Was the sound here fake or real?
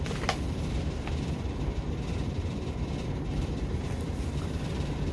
fake